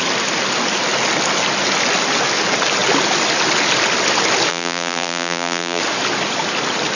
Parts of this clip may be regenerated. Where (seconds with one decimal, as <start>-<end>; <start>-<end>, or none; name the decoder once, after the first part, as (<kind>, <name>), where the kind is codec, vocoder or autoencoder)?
4.5-5.8 (vocoder, BigVGAN v2)

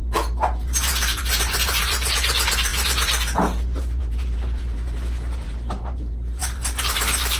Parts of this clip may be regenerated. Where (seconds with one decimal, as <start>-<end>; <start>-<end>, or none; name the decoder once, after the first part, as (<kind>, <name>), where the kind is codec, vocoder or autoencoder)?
0.0-7.4 (vocoder, BigVGAN v2)

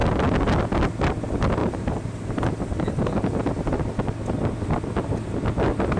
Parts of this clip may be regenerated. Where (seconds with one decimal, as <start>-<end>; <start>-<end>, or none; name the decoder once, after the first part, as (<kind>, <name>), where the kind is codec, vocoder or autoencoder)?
1.6-2.4 (vocoder, BigVGAN v2)

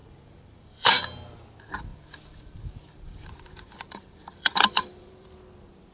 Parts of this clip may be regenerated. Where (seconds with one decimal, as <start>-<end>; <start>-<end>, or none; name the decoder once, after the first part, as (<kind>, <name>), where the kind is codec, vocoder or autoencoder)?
0.0-1.0 (vocoder, BigVGAN v2); 1.9-5.3

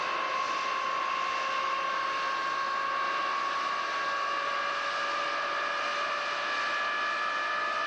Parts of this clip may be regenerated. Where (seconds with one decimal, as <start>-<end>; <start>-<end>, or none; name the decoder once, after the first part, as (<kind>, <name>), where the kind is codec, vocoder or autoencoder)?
none

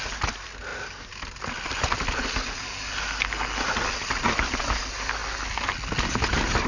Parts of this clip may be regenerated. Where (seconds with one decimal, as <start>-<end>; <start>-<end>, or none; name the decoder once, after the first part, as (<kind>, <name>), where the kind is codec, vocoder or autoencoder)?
none

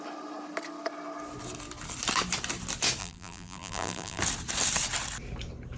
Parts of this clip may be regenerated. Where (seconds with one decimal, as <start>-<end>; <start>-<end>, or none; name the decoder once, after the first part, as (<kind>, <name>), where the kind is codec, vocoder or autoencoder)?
3.0-4.2 (vocoder, BigVGAN v2)

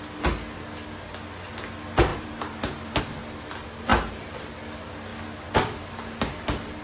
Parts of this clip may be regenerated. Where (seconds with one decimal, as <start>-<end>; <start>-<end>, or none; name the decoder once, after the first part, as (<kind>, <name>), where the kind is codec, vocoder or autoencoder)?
2.1-3.0 (vocoder, BigVGAN v2); 3.9-4.5